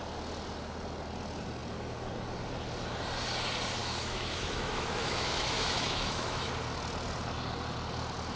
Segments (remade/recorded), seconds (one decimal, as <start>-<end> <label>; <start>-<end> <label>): 0.0-3.8 recorded; 3.8-6.5 remade; 6.5-8.4 recorded